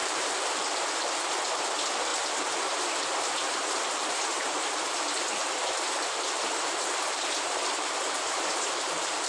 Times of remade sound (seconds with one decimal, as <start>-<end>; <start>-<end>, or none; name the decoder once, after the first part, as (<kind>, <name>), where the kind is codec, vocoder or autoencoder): 0.0-1.4 (vocoder, BigVGAN v2); 3.8-9.3